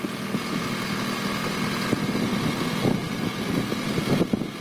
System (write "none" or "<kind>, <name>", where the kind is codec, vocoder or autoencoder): none